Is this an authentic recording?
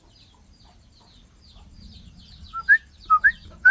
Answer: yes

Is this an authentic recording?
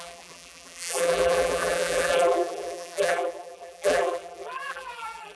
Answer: no